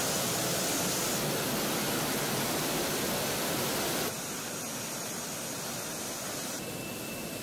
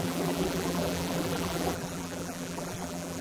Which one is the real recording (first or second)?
first